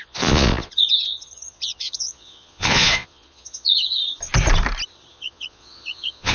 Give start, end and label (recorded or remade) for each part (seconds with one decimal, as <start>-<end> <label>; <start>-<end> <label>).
0.0-4.0 remade; 4.0-5.1 recorded; 5.1-6.3 remade